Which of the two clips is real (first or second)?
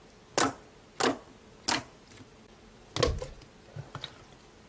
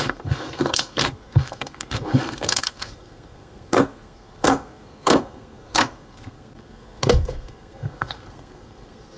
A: first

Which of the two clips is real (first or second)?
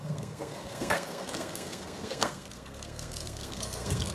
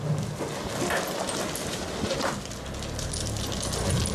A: second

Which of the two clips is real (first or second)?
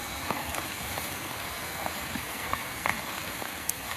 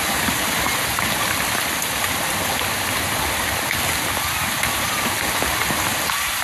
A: second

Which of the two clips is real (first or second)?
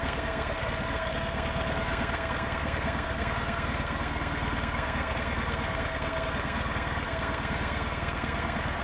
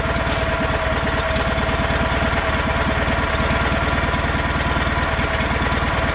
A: second